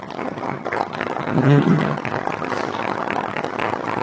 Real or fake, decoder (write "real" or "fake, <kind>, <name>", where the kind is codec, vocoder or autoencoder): fake, vocoder, HiFi-GAN